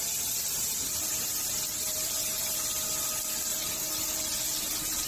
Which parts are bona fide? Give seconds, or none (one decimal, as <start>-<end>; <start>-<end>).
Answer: 0.0-3.5; 4.1-5.1